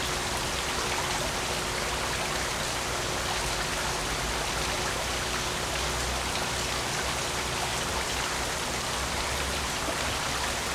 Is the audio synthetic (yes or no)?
no